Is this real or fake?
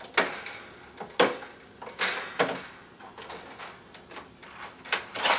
real